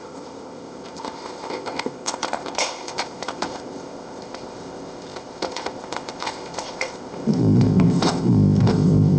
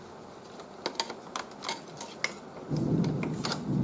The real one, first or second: second